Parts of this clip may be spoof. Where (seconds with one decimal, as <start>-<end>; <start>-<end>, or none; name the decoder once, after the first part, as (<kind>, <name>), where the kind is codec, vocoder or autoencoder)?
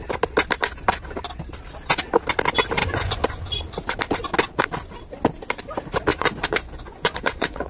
2.8-3.4 (vocoder, Vocos); 6.1-7.7